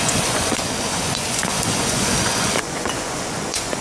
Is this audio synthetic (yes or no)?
yes